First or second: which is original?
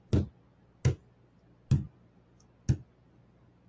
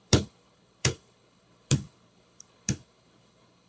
first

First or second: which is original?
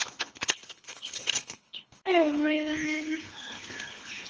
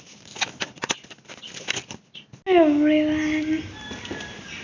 second